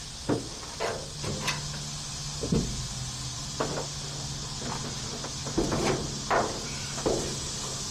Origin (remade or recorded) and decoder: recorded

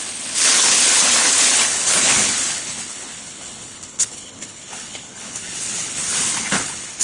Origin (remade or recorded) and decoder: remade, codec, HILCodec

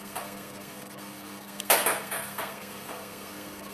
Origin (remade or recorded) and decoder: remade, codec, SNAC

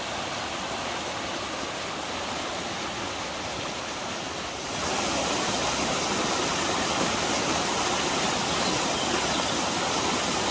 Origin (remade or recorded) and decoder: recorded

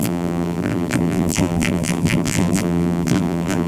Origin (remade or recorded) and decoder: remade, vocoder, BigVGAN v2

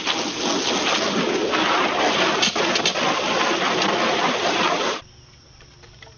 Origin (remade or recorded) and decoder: recorded